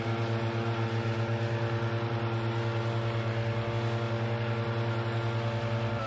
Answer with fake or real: real